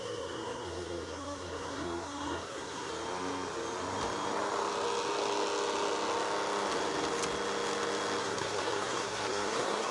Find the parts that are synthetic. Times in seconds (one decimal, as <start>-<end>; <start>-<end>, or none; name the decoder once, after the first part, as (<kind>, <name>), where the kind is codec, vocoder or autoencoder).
0.0-2.9 (codec, SNAC); 8.2-9.9